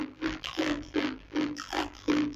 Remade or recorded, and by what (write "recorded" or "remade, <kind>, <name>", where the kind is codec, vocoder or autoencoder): remade, vocoder, BigVGAN v2